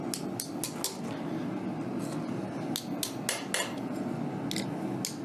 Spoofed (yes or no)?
no